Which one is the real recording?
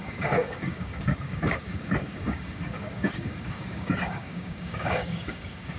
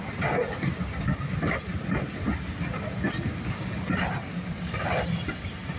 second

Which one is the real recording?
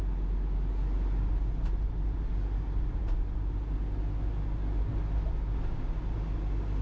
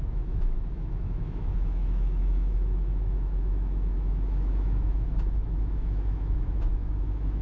first